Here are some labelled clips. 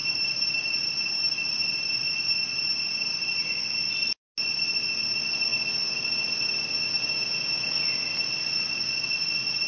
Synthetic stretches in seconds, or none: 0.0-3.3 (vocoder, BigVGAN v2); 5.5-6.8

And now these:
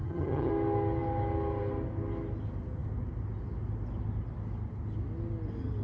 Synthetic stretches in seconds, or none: 0.0-0.5 (vocoder, HiFi-GAN)